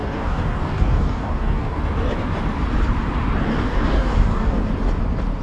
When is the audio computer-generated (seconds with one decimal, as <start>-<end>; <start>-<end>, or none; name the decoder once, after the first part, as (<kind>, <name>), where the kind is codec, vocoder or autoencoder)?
0.0-1.8 (codec, DAC); 3.5-4.6